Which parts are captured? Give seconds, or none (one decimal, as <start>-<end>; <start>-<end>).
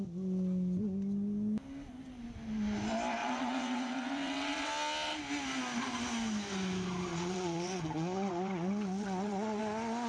0.0-3.2; 4.7-7.1; 9.6-10.1